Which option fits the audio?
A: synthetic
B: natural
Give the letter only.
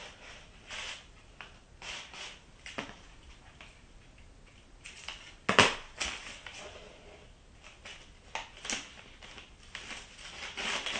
B